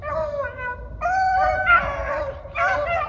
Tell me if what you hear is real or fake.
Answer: real